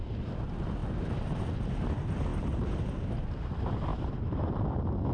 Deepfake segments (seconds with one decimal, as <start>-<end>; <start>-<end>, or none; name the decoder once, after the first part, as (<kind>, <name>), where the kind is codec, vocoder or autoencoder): 3.9-4.5 (vocoder, BigVGAN v2)

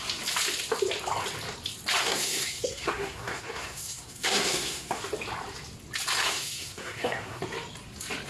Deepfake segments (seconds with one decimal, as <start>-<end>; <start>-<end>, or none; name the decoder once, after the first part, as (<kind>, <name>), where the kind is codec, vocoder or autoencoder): 2.0-5.0 (codec, SNAC); 6.2-7.4

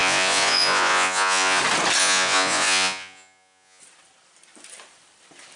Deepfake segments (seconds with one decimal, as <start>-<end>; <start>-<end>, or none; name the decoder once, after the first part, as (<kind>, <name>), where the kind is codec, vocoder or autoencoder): 0.0-1.6 (vocoder, Vocos); 2.0-3.8